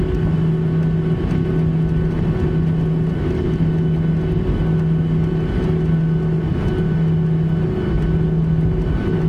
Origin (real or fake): real